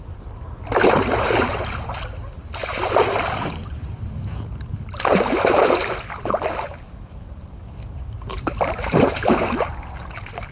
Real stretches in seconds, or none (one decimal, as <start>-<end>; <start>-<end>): 0.0-8.3; 9.7-10.5

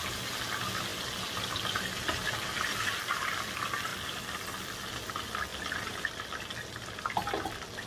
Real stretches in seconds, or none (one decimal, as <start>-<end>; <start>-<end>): 0.0-5.5

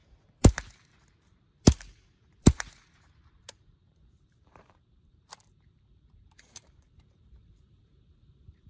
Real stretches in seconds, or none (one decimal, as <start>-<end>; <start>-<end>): none

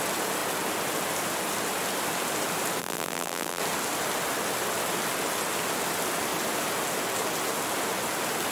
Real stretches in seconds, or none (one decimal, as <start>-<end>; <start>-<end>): 0.0-2.8; 3.6-8.5

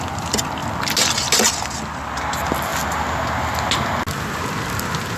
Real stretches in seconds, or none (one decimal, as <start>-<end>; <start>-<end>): 0.0-5.2

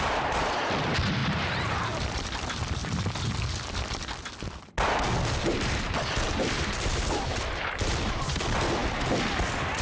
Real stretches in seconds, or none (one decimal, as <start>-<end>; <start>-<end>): 2.8-6.4